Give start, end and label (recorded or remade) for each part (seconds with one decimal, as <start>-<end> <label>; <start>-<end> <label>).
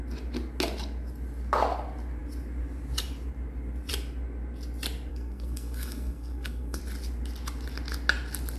0.0-5.1 recorded; 5.1-6.8 remade; 6.8-8.6 recorded